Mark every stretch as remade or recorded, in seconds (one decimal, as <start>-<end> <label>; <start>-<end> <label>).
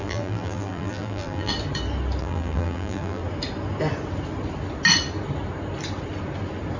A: 0.0-1.5 remade; 1.5-2.2 recorded; 2.2-3.2 remade; 3.2-6.8 recorded